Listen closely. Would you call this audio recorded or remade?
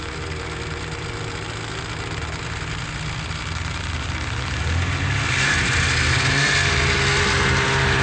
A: recorded